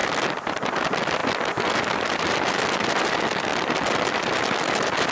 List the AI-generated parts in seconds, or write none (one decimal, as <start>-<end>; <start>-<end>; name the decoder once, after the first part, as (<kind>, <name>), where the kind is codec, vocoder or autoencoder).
0.0-0.7 (vocoder, BigVGAN v2); 1.2-3.1; 3.5-4.4